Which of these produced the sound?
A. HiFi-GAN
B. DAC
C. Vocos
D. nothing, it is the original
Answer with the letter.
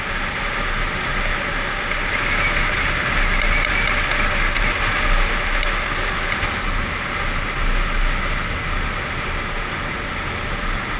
D